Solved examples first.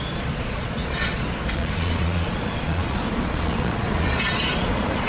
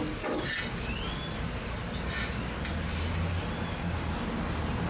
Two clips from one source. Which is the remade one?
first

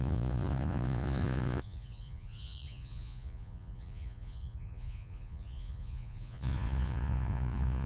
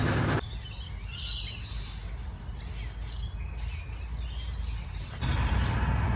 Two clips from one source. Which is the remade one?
first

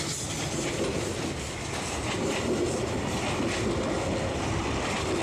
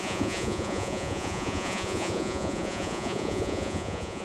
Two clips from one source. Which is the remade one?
second